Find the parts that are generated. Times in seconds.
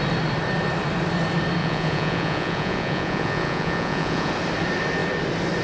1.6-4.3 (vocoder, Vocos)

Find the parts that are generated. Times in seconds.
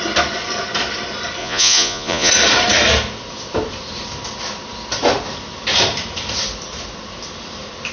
1.4-2.3 (vocoder, Vocos)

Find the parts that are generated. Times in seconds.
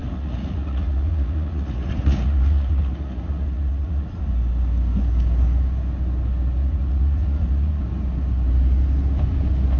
0.0-4.3 (vocoder, Vocos); 6.6-7.8